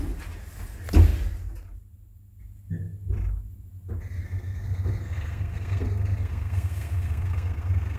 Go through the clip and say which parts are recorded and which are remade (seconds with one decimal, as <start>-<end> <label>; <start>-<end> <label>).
0.0-4.2 recorded; 4.2-8.0 remade